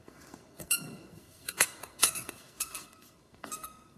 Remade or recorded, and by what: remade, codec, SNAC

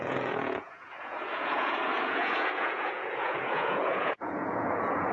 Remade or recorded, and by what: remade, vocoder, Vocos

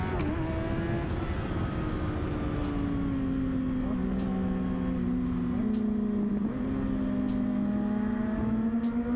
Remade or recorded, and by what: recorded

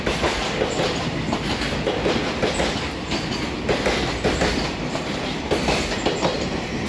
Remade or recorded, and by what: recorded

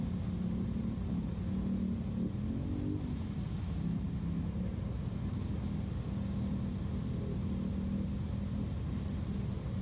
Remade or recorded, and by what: recorded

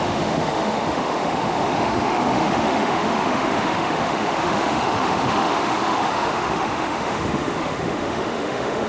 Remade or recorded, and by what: remade, autoencoder, DAC-VAE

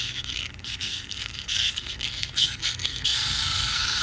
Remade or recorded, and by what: remade, codec, SNAC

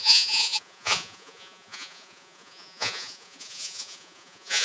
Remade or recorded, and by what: remade, vocoder, Vocos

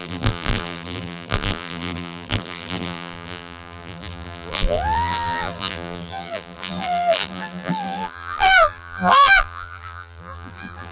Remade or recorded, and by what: remade, vocoder, BigVGAN v2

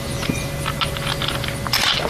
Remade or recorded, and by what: recorded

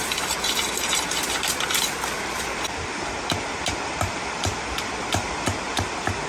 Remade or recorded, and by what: remade, vocoder, BigVGAN v2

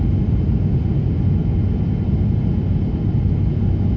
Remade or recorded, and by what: recorded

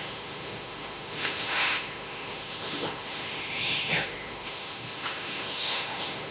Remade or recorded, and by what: remade, autoencoder, DAC-VAE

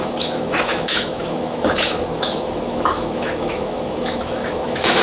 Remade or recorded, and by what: remade, autoencoder, DAC-VAE